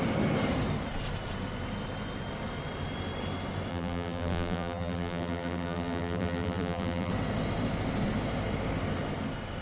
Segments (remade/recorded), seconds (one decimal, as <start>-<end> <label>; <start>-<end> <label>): 0.0-3.7 recorded; 3.7-7.1 remade; 7.1-9.6 recorded